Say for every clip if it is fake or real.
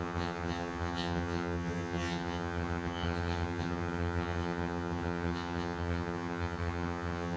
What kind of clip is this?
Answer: fake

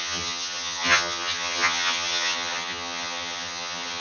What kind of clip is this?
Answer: fake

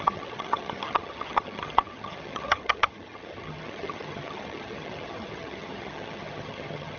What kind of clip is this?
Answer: fake